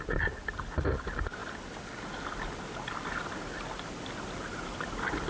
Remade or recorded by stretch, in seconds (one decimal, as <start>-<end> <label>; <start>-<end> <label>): 0.0-5.3 recorded